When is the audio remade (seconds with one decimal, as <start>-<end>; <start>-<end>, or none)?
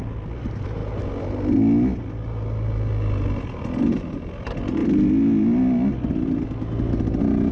none